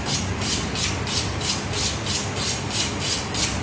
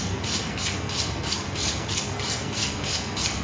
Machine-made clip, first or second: second